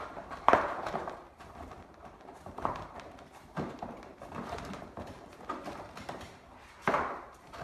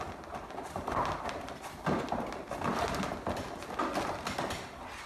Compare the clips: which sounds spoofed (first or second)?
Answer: first